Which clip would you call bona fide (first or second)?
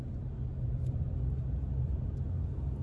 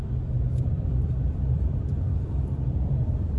first